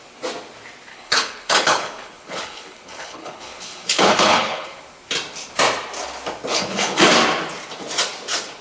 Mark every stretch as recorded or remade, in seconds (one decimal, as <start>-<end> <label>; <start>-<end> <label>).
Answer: 0.0-0.9 recorded; 0.9-4.8 remade; 4.8-6.5 recorded; 6.5-7.0 remade; 7.0-8.6 recorded

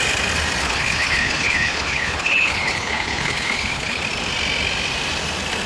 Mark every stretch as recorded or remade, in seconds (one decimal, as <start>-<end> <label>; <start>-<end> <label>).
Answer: 0.0-0.6 recorded; 0.6-4.0 remade; 4.0-5.7 recorded